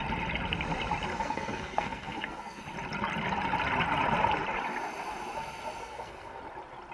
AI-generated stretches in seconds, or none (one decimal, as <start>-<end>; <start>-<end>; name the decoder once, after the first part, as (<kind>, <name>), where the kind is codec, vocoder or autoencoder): 1.1-2.6 (codec, SNAC); 5.8-6.4